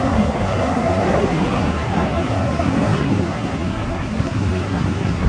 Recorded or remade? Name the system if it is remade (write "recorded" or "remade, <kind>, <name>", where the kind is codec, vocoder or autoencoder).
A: remade, codec, SNAC